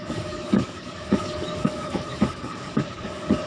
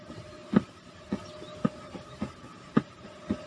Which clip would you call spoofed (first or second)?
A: first